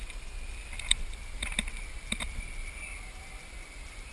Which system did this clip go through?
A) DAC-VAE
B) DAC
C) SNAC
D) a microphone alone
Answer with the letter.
D